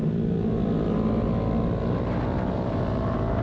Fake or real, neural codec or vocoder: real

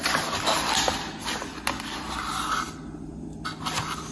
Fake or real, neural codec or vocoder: real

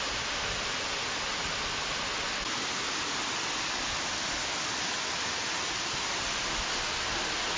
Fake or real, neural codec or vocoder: real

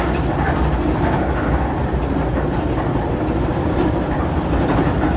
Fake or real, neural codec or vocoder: real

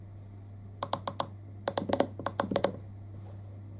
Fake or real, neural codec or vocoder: real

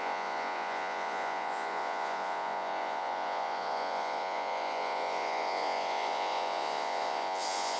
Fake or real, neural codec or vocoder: fake, vocoder, Vocos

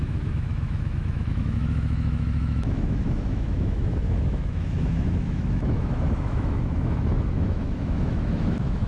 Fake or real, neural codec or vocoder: fake, autoencoder, DAC-VAE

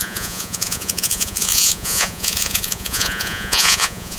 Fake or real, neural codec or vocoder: fake, vocoder, Vocos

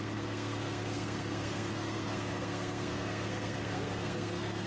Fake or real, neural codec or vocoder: fake, codec, SNAC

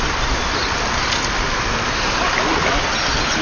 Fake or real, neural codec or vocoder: real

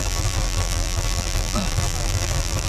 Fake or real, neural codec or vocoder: fake, vocoder, BigVGAN v2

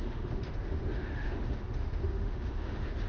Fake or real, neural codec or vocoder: fake, autoencoder, DAC-VAE